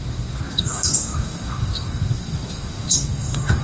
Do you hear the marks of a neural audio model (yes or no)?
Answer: yes